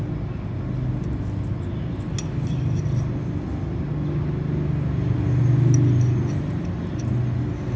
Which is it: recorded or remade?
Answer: recorded